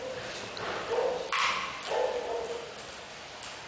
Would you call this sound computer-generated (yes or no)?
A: no